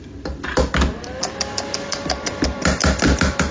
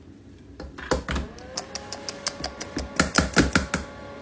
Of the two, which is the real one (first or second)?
second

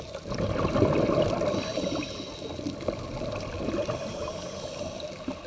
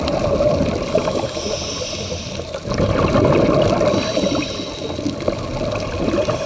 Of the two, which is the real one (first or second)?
second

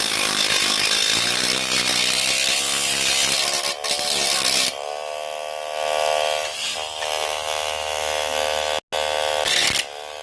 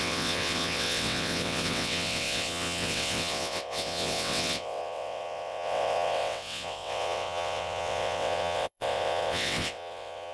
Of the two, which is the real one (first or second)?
first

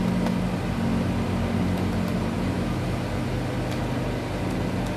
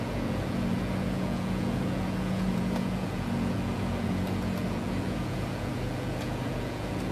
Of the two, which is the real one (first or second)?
first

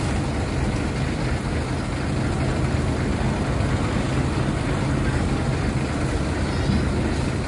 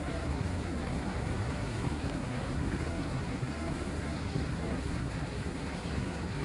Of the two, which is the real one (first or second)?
first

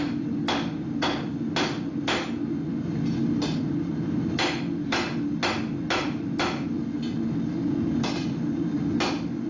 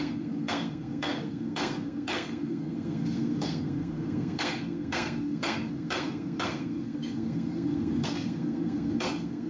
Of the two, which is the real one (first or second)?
first